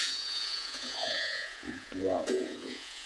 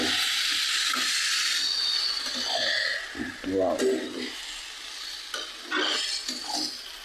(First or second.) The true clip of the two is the second